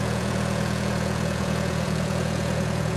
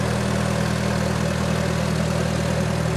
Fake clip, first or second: first